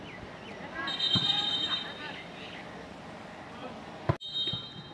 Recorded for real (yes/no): yes